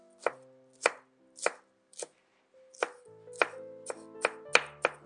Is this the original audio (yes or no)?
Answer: yes